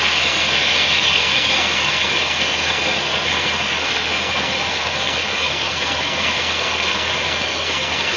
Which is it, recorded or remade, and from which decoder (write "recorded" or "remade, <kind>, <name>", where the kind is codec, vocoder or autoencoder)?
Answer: remade, codec, SNAC